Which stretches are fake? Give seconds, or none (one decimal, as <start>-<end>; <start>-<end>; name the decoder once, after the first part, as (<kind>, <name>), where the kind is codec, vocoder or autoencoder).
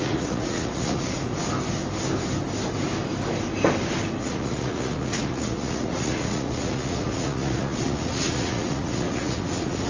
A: 0.0-1.3 (vocoder, Vocos); 4.2-9.9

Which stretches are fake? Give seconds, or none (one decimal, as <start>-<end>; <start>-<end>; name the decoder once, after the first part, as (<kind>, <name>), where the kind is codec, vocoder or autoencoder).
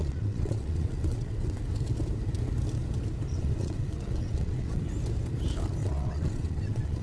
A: 0.0-1.6 (vocoder, WaveNeXt); 3.3-4.8; 5.8-7.0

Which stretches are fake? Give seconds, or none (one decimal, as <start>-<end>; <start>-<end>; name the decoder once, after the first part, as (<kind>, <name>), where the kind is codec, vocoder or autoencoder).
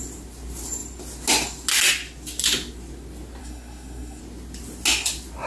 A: 3.4-4.2 (codec, SNAC)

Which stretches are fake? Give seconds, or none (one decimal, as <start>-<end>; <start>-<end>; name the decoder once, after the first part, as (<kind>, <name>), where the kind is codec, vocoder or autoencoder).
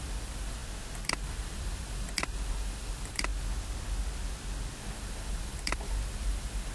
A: 0.0-0.6 (vocoder, BigVGAN v2); 1.1-3.3; 4.8-6.7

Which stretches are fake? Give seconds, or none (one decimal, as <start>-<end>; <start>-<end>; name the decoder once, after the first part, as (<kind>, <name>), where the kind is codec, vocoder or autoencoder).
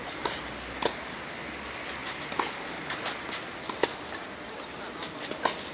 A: none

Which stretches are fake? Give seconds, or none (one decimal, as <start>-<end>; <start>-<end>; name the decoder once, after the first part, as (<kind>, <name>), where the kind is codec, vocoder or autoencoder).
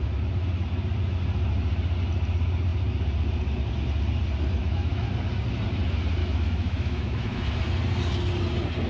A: 4.6-5.1 (autoencoder, DAC-VAE); 6.2-7.4